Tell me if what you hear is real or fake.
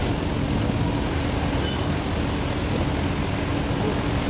real